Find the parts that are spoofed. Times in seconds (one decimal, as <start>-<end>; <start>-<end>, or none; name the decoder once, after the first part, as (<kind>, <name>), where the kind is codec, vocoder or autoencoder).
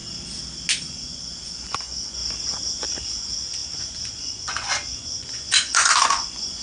0.9-2.2 (vocoder, Vocos); 2.7-6.6